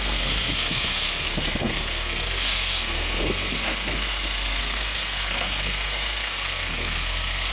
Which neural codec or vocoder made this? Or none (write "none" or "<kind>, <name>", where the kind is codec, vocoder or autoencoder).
codec, SNAC